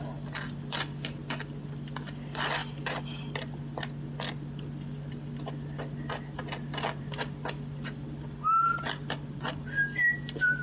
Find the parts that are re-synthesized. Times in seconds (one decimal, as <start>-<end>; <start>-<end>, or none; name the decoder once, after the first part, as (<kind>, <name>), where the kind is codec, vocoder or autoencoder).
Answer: none